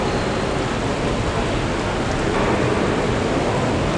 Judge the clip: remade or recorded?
recorded